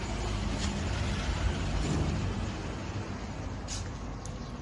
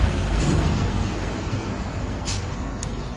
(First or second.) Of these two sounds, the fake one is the second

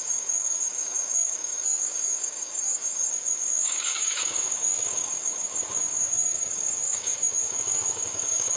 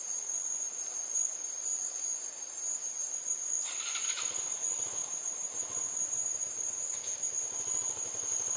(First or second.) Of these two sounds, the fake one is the first